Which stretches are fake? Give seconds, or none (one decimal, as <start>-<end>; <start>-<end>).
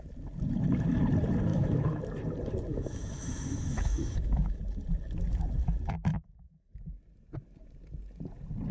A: 1.5-2.0; 2.7-4.6; 6.1-6.7